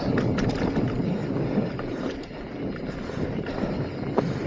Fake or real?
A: real